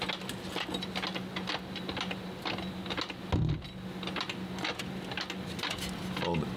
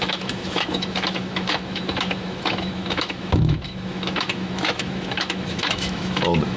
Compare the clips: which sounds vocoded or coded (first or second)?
second